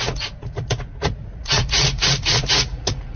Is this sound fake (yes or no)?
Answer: yes